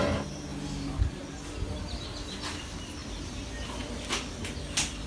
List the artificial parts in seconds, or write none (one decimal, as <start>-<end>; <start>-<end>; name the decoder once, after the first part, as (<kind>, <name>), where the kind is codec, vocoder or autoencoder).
none

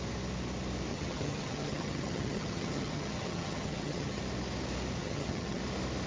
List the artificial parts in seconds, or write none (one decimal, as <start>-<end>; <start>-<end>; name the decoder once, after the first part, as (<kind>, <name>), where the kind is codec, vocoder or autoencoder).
0.9-4.2 (vocoder, HiFi-GAN); 5.0-5.6